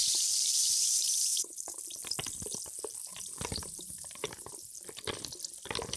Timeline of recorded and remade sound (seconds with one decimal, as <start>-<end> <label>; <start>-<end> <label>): 0.0-1.8 remade; 1.8-3.1 recorded; 3.1-4.7 remade; 4.7-6.0 recorded